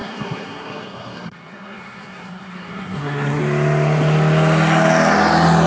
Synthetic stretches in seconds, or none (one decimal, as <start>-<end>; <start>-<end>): 0.0-3.4